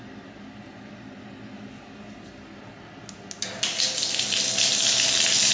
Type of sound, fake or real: real